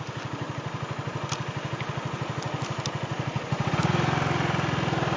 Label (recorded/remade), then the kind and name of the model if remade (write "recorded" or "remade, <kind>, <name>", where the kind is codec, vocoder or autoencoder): recorded